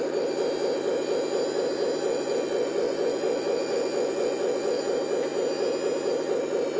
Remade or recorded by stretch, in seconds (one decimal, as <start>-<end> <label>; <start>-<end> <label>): 0.0-2.1 recorded; 2.1-4.8 remade; 4.8-6.8 recorded